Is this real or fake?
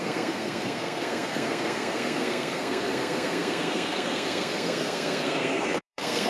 fake